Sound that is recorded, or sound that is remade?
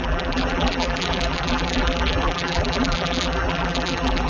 remade